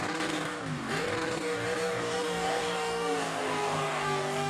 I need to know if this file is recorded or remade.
remade